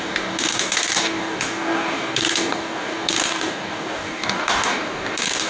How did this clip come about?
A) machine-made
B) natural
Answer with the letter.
A